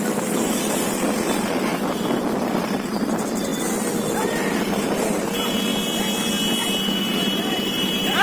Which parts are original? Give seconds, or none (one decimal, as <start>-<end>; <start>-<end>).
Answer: 1.7-2.6; 5.7-7.0

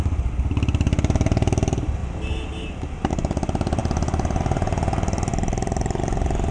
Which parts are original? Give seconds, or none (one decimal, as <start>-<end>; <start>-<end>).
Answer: 0.0-6.5

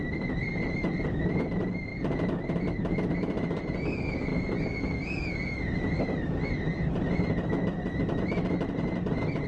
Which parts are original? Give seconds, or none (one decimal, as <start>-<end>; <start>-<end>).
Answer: 0.0-9.5

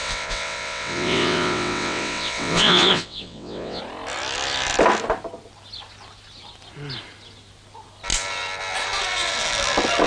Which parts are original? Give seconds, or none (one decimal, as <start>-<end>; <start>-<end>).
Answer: 3.8-10.1

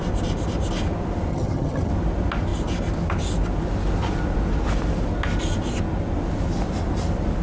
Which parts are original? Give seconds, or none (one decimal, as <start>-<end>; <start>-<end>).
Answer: 0.0-1.3; 1.9-7.4

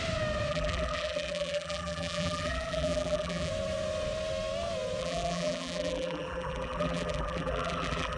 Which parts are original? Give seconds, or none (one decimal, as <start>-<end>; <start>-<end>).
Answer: 0.0-0.5; 3.5-5.0

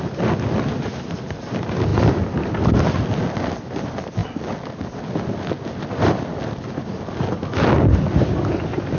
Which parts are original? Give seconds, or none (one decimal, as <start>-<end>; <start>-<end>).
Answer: 0.0-9.0

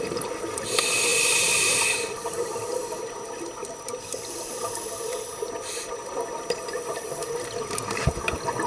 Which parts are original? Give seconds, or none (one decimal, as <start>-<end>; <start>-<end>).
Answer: 0.0-8.7